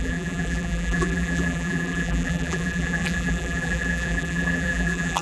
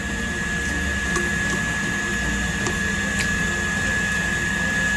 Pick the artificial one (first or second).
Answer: first